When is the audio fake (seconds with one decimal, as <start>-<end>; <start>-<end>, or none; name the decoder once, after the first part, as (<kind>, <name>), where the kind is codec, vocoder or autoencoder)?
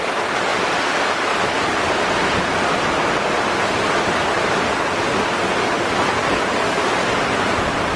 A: 0.5-4.4 (vocoder, BigVGAN v2)